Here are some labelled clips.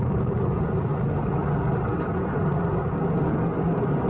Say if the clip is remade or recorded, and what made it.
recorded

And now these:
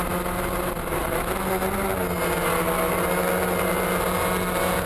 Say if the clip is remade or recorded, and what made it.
recorded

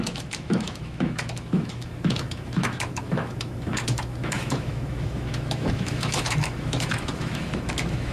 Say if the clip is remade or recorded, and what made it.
remade, autoencoder, DAC-VAE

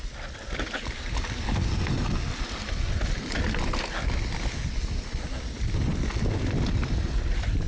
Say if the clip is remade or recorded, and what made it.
recorded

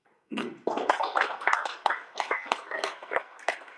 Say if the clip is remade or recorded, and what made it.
remade, codec, SNAC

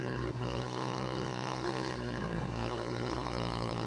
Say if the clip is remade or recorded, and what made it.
remade, codec, SNAC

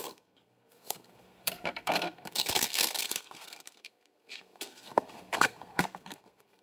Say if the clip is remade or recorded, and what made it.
remade, codec, SNAC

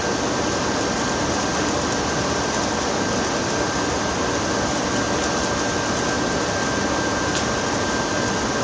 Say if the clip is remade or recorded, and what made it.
recorded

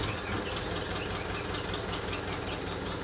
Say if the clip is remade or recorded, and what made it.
recorded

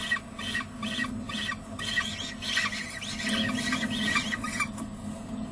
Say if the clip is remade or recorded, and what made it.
recorded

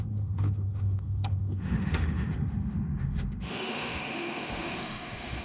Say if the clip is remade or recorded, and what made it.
remade, autoencoder, DAC-VAE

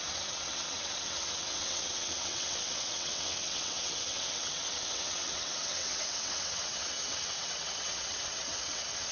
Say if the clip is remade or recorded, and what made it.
remade, vocoder, WaveNeXt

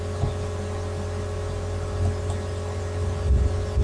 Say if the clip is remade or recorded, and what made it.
recorded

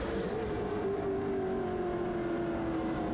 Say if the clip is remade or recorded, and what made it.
recorded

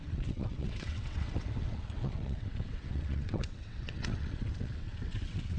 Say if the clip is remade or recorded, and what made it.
remade, vocoder, WaveNeXt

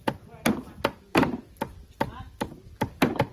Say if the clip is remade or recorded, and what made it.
recorded